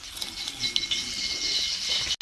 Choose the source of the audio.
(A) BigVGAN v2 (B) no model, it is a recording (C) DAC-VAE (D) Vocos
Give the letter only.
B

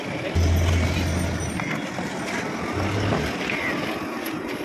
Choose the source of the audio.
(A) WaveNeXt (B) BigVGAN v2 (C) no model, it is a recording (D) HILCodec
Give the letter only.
C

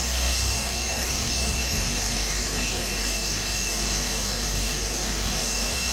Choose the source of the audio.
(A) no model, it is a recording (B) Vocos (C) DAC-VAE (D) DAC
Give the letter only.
D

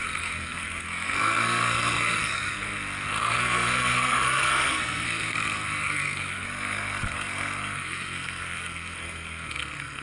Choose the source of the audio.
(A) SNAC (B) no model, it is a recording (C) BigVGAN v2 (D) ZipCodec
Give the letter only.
A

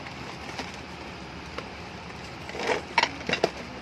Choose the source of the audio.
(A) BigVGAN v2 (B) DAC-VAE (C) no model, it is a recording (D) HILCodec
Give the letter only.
C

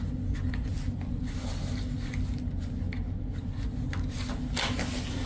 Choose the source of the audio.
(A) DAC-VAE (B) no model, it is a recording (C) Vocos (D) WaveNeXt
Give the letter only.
B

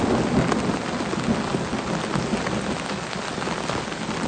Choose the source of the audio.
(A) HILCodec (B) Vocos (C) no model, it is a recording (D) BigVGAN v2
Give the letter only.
C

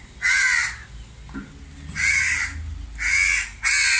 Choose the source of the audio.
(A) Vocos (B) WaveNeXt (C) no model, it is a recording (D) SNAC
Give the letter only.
C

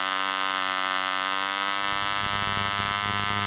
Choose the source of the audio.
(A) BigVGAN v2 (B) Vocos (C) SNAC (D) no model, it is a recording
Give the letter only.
D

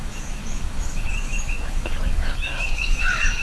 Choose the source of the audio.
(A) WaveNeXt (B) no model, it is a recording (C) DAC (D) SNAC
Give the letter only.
C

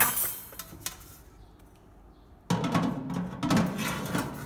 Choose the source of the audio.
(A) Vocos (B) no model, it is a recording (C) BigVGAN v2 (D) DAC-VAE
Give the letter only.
B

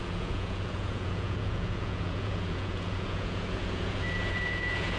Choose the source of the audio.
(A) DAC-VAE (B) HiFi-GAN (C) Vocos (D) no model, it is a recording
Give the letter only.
C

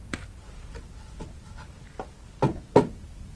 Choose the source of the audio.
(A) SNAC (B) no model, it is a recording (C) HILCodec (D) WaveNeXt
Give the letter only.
B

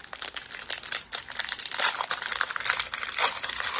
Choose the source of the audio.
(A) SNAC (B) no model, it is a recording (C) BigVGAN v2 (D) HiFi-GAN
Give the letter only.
C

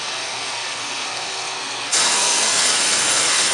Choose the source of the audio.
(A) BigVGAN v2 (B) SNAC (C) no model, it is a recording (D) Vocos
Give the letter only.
B